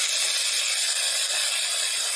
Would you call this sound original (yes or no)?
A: yes